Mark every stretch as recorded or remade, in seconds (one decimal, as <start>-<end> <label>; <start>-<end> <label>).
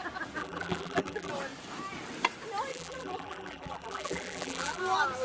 0.0-0.4 recorded; 0.4-1.3 remade; 1.3-2.7 recorded; 2.7-4.8 remade; 4.8-5.2 recorded